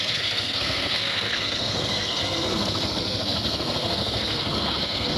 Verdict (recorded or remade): remade